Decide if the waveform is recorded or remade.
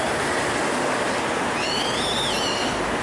recorded